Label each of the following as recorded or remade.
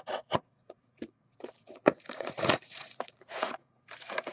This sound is remade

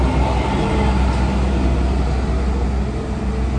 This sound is recorded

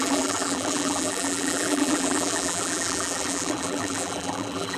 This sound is remade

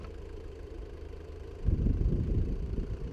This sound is remade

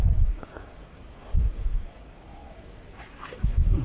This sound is remade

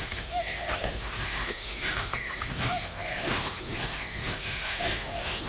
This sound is remade